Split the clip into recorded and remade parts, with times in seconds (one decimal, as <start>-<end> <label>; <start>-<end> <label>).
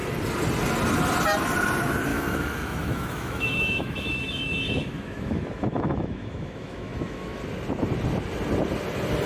0.0-2.1 recorded; 2.1-7.4 remade; 7.4-9.3 recorded